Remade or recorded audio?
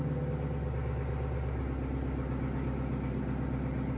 recorded